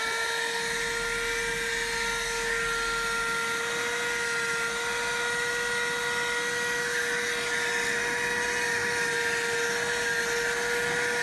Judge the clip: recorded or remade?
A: recorded